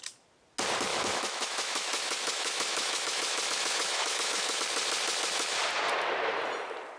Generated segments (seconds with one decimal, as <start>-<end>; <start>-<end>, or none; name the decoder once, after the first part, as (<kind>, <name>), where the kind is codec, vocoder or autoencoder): 0.9-4.6 (autoencoder, DAC-VAE)